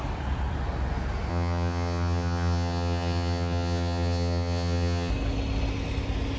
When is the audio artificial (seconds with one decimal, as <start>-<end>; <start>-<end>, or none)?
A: 1.3-5.1